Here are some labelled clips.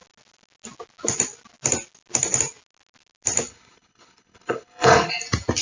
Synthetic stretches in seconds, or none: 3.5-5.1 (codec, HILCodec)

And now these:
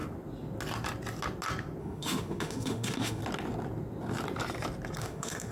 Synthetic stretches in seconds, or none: 1.8-3.2 (autoencoder, DAC-VAE); 5.0-5.5

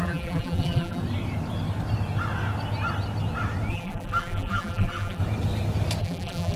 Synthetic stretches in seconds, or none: 0.0-1.0 (vocoder, BigVGAN v2); 3.7-5.2; 6.0-6.6

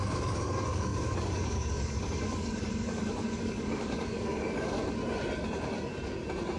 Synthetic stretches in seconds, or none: 0.0-4.8 (codec, DAC)